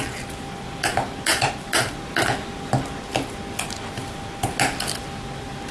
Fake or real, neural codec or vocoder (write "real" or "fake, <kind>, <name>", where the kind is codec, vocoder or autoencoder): real